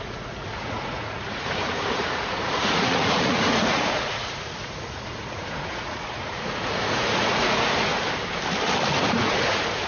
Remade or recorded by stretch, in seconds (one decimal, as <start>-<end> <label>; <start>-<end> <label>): 0.0-7.9 remade; 7.9-8.9 recorded; 8.9-9.9 remade